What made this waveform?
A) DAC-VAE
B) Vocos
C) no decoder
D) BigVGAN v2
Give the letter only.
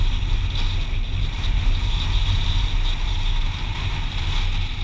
C